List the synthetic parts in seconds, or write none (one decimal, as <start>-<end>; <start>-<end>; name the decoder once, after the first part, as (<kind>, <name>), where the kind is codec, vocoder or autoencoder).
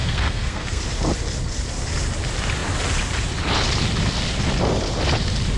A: 0.0-0.8 (codec, SNAC)